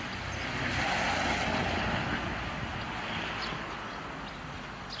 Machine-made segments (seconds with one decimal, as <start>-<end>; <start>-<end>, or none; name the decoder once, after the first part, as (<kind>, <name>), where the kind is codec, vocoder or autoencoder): none